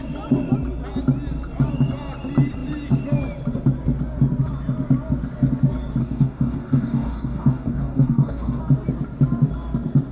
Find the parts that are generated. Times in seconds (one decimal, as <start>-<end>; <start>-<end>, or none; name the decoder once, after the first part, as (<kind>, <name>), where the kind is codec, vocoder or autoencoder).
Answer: 6.0-8.6 (codec, DAC)